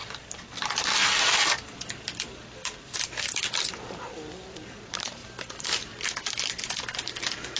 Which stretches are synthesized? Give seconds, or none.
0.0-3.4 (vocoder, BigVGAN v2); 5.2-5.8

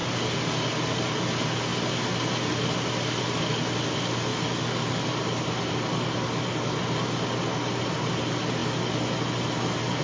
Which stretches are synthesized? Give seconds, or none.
0.0-4.3 (vocoder, BigVGAN v2); 5.1-8.6

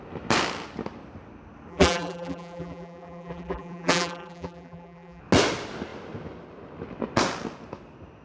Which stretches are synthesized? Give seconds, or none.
1.7-5.2 (vocoder, BigVGAN v2)

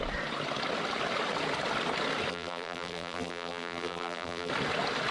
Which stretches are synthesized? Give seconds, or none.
2.3-4.5 (vocoder, BigVGAN v2)